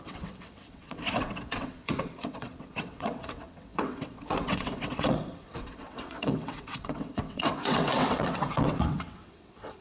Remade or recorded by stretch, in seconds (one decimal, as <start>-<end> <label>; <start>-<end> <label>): 0.0-9.8 remade